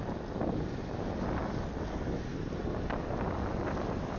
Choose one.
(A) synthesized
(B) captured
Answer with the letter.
B